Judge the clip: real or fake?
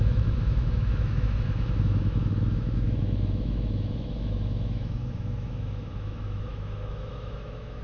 fake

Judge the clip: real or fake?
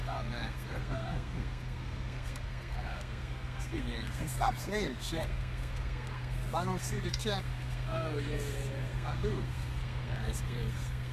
fake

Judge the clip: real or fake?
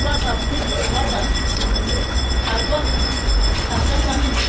fake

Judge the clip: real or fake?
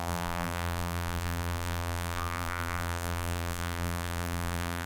fake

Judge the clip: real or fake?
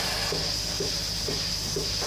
real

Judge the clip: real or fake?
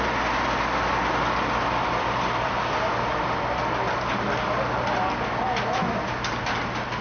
real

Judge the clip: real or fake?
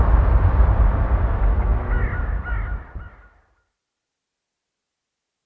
real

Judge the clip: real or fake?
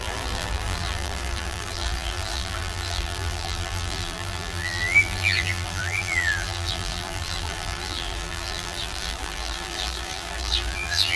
fake